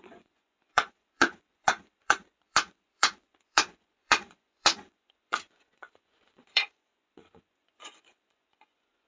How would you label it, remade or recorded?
remade